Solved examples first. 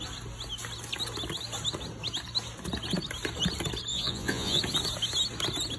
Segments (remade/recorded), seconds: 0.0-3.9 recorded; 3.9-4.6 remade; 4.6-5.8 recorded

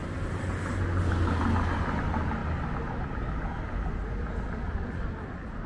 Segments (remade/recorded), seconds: 0.0-5.7 recorded

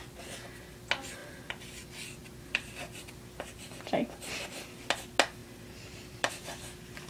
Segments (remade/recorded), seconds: 0.0-2.2 recorded; 2.2-3.0 remade; 3.0-5.4 recorded; 5.4-6.3 remade; 6.3-7.1 recorded

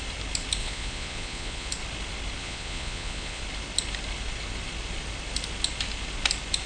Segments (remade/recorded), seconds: 0.0-0.6 recorded; 0.6-1.7 remade; 1.7-2.4 recorded; 2.4-3.4 remade; 3.4-6.7 recorded